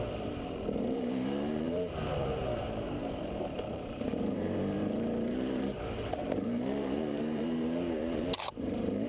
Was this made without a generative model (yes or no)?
no